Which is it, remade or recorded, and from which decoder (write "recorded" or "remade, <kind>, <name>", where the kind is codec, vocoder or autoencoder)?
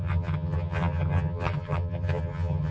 remade, vocoder, HiFi-GAN